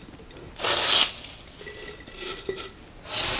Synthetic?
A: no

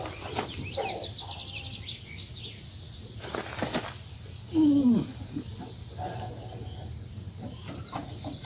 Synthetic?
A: no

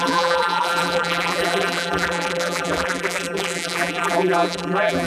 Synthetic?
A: yes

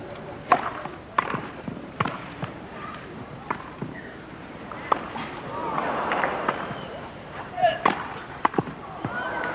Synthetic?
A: yes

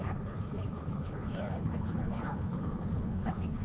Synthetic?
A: yes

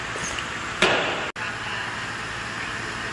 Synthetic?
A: no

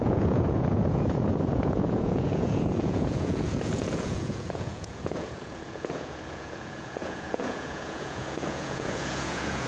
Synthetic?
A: yes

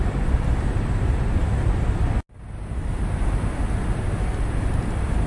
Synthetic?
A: no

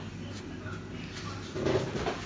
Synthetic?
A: no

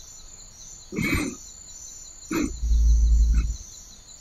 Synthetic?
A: no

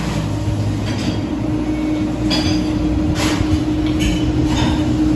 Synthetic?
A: no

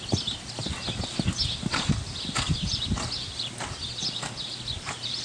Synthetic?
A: no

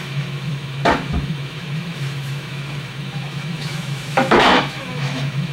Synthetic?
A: yes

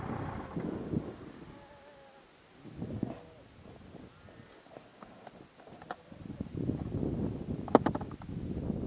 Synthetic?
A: no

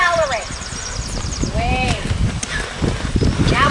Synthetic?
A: yes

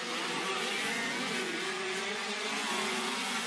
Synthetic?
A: yes